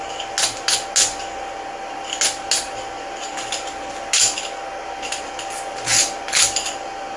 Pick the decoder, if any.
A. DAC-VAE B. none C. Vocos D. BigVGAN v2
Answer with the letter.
B